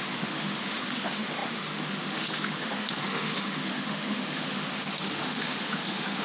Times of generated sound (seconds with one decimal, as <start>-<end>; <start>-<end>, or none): 0.0-6.2